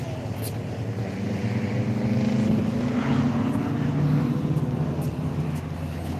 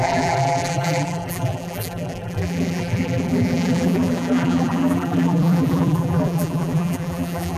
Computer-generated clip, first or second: second